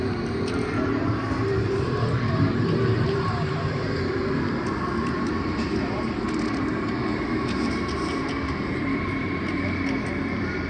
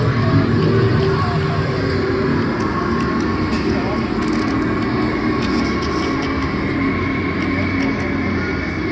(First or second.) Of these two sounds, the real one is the second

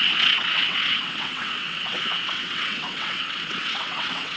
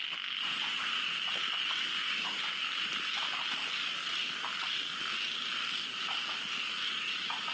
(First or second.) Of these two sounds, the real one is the second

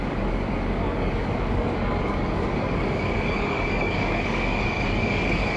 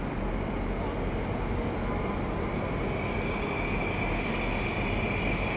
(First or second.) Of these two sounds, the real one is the second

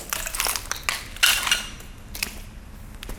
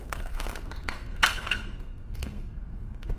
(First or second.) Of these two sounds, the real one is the first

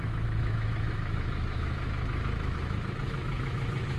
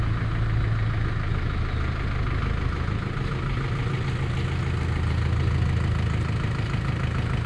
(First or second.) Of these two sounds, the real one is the second